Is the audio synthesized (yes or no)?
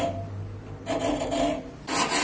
no